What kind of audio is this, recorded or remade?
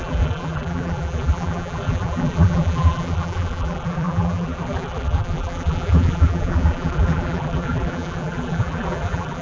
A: remade